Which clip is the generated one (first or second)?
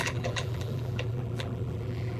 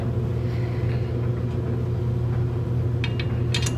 first